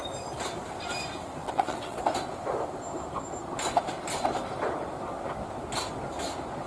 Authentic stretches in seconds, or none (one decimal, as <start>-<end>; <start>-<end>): 0.0-1.4; 2.0-6.7